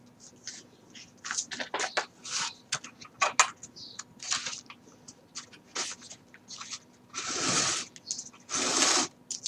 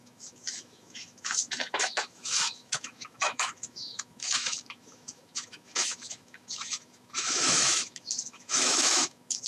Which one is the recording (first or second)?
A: first